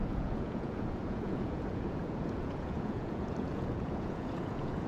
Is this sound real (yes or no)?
no